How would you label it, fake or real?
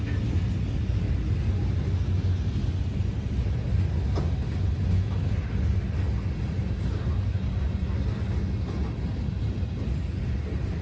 real